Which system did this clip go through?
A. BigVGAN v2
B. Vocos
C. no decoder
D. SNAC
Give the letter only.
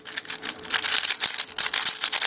C